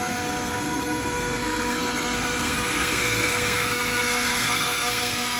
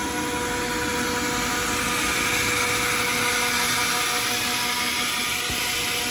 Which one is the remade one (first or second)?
first